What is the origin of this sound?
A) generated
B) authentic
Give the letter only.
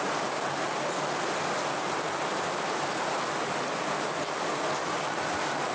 B